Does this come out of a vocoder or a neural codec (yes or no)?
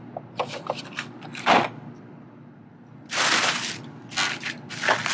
no